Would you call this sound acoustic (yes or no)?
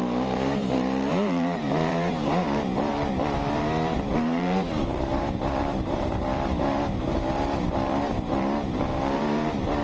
no